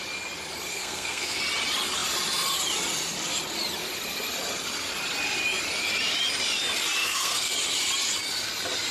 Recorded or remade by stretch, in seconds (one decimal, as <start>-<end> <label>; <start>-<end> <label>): 0.0-0.7 recorded; 0.7-1.4 remade; 1.4-7.0 recorded; 7.0-7.5 remade; 7.5-8.9 recorded